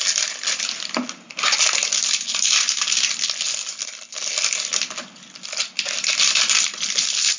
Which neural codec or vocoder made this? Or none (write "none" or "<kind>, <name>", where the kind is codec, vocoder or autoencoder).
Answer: none